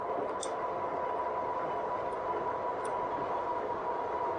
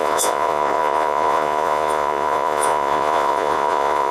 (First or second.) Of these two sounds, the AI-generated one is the second